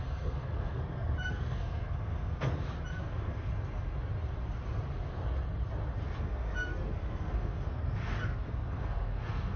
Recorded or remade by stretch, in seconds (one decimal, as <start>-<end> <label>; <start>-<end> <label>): 0.0-2.5 remade; 2.5-3.0 recorded; 3.0-3.5 remade; 3.5-6.2 recorded; 6.2-9.6 remade